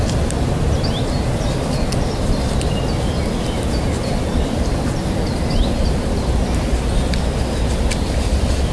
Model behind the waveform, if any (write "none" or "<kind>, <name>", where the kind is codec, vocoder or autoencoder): none